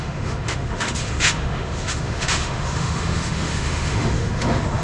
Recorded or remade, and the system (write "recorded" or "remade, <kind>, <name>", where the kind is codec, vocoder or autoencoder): remade, autoencoder, DAC-VAE